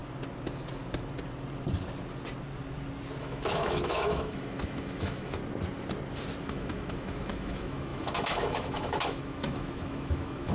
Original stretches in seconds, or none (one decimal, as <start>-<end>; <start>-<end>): 0.0-3.2; 5.4-6.4